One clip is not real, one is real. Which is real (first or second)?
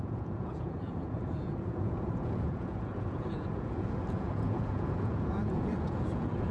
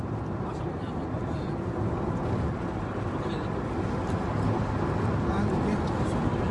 second